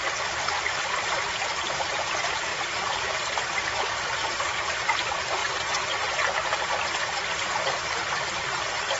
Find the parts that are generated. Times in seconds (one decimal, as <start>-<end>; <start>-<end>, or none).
0.0-2.5; 3.9-5.4; 7.3-9.0